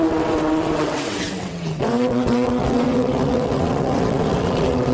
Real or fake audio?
fake